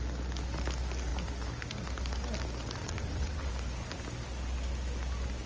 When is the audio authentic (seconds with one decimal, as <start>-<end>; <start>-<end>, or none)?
0.0-2.8; 3.5-5.5